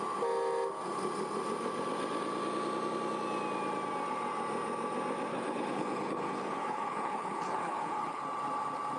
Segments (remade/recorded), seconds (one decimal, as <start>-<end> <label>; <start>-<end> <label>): 0.0-5.3 recorded; 5.3-8.2 remade; 8.2-9.0 recorded